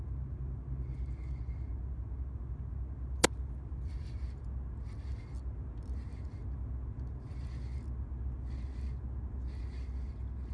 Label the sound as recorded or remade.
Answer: recorded